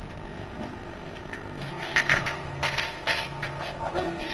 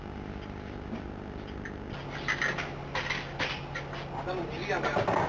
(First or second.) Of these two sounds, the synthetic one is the first